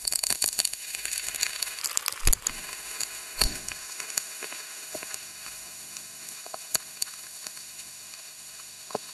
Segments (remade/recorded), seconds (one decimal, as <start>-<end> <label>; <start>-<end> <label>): 0.0-1.8 remade; 1.8-2.5 recorded; 2.5-9.1 remade